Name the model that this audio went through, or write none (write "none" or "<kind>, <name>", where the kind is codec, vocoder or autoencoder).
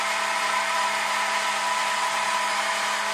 none